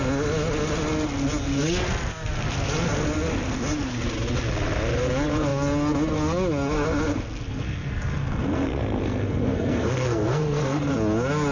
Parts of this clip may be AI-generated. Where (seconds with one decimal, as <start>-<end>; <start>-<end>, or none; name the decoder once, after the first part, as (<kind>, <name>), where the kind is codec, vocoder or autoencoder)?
7.5-10.8 (codec, SNAC)